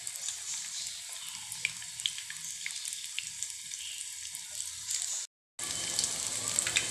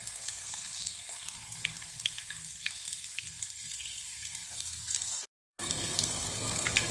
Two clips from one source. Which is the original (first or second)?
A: first